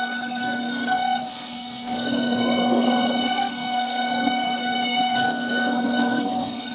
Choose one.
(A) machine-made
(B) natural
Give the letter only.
A